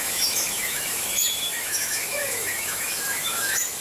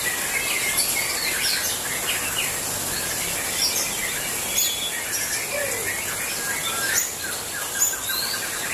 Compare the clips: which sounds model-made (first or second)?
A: first